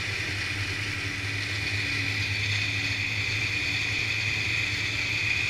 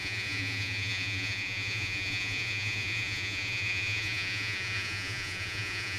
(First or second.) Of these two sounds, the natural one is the first